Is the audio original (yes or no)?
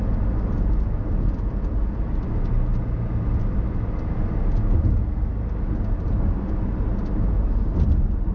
yes